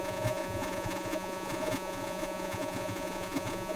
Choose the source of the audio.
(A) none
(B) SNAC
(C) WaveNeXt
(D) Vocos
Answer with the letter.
D